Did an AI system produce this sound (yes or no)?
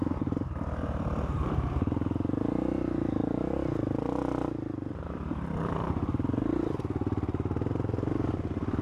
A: no